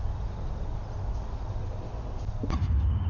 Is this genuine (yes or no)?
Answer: yes